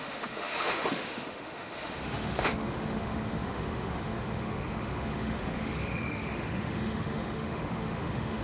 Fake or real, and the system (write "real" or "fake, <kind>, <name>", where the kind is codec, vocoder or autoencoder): fake, autoencoder, DAC-VAE